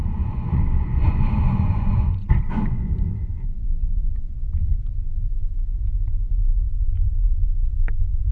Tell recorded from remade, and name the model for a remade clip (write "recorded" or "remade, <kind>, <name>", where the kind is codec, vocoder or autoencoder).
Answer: remade, vocoder, Vocos